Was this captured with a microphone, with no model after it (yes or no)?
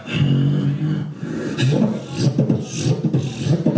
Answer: yes